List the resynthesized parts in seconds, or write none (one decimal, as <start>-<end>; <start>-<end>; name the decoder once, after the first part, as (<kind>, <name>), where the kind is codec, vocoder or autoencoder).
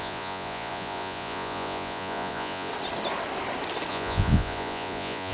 0.0-2.7 (vocoder, Vocos); 3.9-5.3